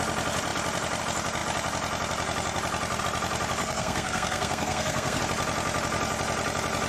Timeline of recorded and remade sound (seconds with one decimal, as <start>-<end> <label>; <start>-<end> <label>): 0.0-3.6 recorded; 3.6-5.2 remade; 5.2-6.9 recorded